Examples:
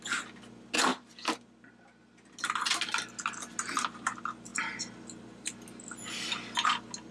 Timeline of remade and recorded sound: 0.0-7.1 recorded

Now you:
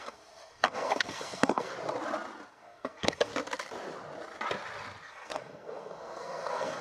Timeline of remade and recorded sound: 0.0-1.7 remade; 1.7-2.5 recorded; 2.5-3.3 remade; 3.3-5.1 recorded; 5.1-6.8 remade

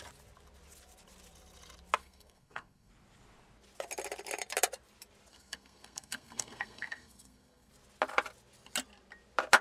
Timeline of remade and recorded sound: 0.0-2.0 recorded; 2.0-2.9 remade; 2.9-5.3 recorded; 5.3-7.7 remade; 7.7-9.6 recorded

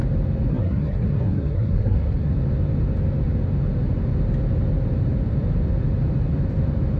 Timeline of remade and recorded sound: 0.0-0.5 recorded; 0.5-2.3 remade; 2.3-7.0 recorded

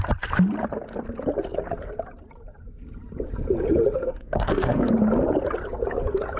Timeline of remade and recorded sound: 0.0-4.0 recorded; 4.0-4.9 remade; 4.9-6.4 recorded

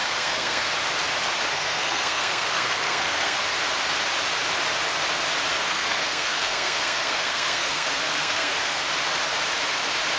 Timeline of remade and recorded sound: 0.0-0.7 remade; 0.7-1.5 recorded; 1.5-3.4 remade; 3.4-5.5 recorded; 5.5-8.8 remade; 8.8-10.2 recorded

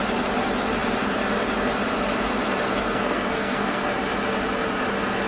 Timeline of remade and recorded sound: 0.0-2.9 recorded; 2.9-3.9 remade; 3.9-5.3 recorded

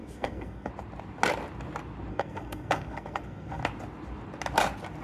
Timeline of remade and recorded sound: 0.0-0.7 remade; 0.7-2.1 recorded; 2.1-3.6 remade; 3.6-5.0 recorded